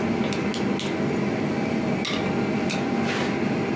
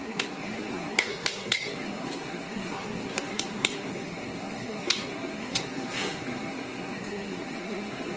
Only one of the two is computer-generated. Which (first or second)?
second